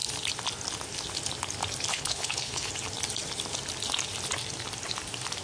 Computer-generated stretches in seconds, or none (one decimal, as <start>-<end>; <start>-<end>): 1.9-2.7